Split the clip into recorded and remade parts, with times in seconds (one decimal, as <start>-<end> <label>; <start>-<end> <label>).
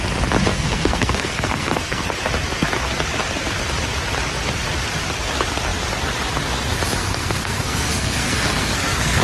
0.0-0.5 recorded; 0.5-2.1 remade; 2.1-7.0 recorded; 7.0-9.2 remade